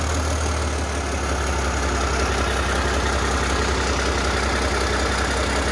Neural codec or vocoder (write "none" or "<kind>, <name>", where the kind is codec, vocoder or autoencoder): none